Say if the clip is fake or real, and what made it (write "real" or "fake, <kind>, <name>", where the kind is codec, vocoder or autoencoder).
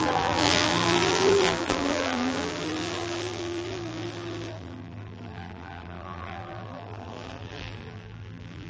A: fake, vocoder, BigVGAN v2